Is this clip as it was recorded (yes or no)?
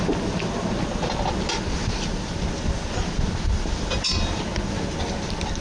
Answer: yes